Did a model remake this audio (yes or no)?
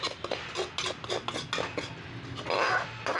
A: no